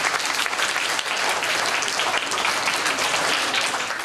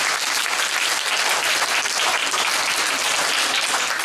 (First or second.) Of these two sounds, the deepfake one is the first